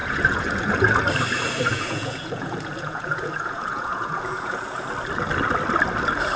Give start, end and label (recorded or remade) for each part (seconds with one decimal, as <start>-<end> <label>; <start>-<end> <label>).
0.0-1.0 remade; 1.0-1.7 recorded; 1.7-4.8 remade; 4.8-6.4 recorded